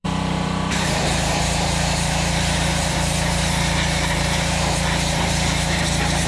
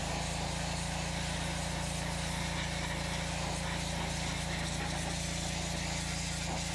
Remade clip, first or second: first